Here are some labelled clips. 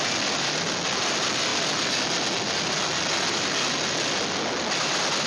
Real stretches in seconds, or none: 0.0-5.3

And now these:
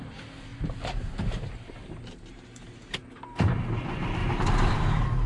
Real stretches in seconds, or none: 0.0-0.5; 3.7-4.2

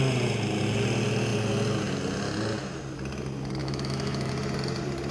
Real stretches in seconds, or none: 0.0-3.6; 4.3-5.1

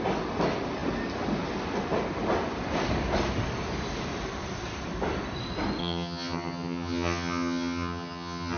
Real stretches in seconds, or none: 0.0-5.8

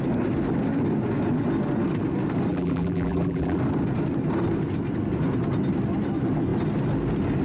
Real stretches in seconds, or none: 0.0-2.5; 3.6-7.4

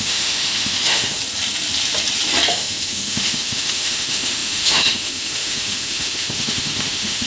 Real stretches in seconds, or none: 1.2-2.5